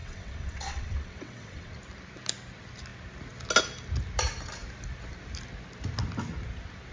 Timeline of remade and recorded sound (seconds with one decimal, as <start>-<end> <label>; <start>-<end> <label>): 0.0-1.7 remade; 1.7-6.9 recorded